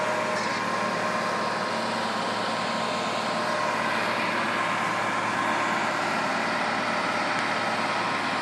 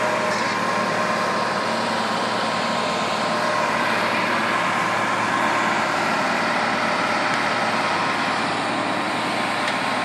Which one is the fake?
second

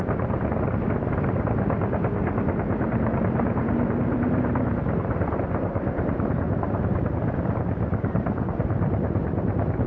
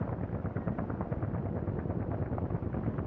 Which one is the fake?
first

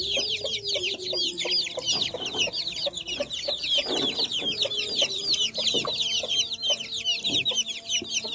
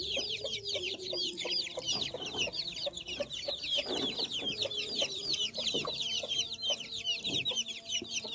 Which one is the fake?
second